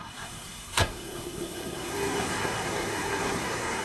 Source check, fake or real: fake